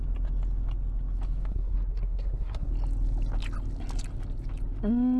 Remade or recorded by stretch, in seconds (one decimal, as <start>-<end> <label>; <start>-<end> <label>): 0.0-1.5 recorded; 1.5-2.7 remade; 2.7-5.2 recorded